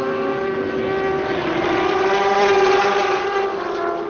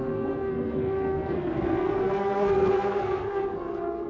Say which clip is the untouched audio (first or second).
first